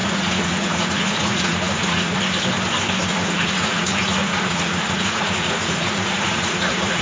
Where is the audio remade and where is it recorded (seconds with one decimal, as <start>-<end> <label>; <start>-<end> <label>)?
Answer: 0.0-2.2 remade; 2.2-3.1 recorded; 3.1-7.0 remade